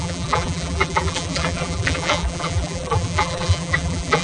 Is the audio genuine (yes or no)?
no